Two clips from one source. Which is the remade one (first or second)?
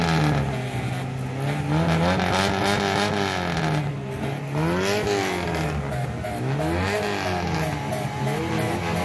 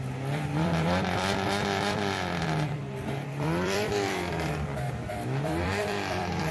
second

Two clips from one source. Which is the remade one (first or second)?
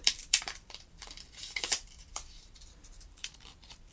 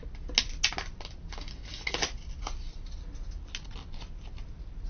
first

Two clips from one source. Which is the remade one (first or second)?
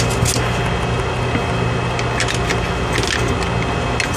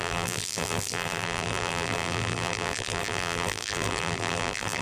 second